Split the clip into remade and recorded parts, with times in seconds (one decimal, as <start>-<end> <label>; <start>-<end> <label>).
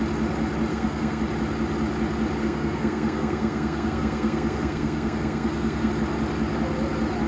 0.0-0.7 recorded; 0.7-1.2 remade; 1.2-2.4 recorded; 2.4-5.9 remade; 5.9-7.3 recorded